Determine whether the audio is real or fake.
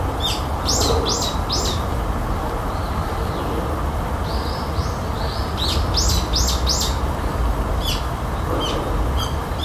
real